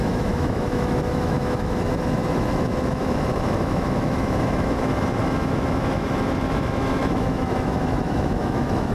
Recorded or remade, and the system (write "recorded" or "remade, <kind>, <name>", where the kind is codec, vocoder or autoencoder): remade, autoencoder, DAC-VAE